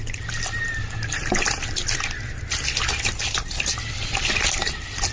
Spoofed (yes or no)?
no